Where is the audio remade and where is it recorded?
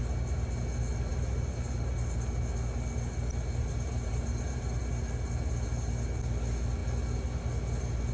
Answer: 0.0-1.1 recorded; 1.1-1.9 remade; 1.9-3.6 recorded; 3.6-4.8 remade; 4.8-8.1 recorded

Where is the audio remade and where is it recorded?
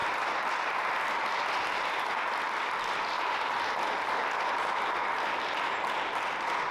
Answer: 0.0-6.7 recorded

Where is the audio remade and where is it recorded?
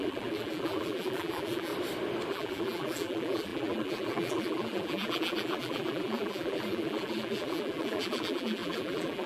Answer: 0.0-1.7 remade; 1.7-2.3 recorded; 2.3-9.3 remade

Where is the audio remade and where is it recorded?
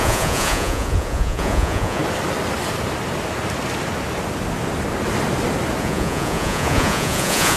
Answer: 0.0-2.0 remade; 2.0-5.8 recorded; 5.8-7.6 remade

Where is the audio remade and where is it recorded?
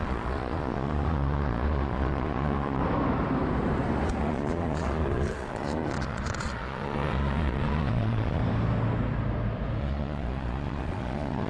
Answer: 0.0-2.8 remade; 2.8-4.2 recorded; 4.2-8.4 remade; 8.4-9.8 recorded; 9.8-11.5 remade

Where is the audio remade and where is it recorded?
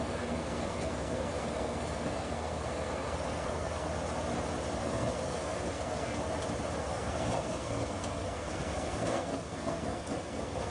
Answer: 0.0-3.9 remade; 3.9-4.8 recorded; 4.8-6.1 remade; 6.1-6.8 recorded; 6.8-10.7 remade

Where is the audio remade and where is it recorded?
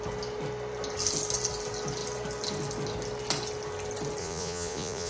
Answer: 0.0-4.2 recorded; 4.2-5.1 remade